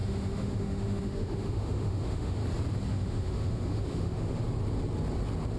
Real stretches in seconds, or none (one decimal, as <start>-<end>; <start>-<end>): 2.4-2.9; 4.4-5.6

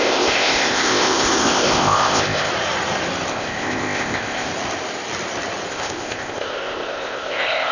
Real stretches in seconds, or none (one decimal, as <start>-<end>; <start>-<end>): 2.5-3.3; 4.5-5.7

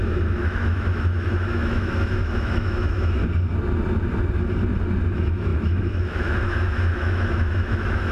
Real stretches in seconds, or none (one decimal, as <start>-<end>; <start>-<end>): 3.2-5.1

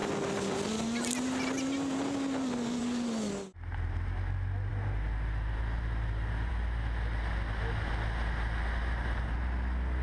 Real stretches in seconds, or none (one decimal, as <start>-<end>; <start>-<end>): 0.0-10.0

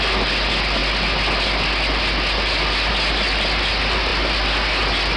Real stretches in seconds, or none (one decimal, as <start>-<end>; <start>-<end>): 0.0-5.2